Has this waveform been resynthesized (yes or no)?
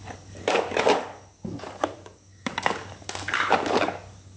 yes